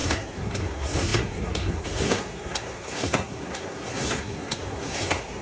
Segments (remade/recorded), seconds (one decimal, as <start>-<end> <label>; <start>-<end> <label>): 0.0-5.4 remade